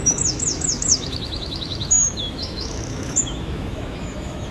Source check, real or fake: fake